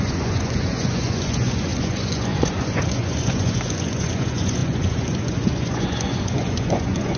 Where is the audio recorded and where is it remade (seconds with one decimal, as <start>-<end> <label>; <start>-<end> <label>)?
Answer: 0.0-7.2 remade